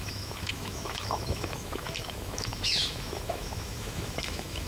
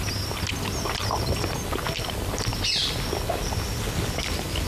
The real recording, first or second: second